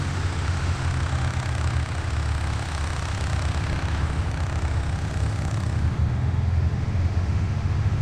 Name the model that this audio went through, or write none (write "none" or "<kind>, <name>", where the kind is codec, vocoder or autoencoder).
autoencoder, DAC-VAE